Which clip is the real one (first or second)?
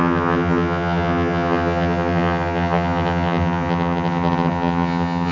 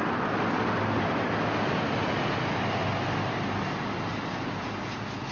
second